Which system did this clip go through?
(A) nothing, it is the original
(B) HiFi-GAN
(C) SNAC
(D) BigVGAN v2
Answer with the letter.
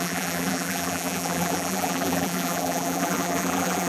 D